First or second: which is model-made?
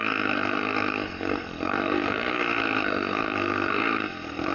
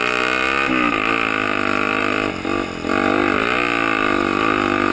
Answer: first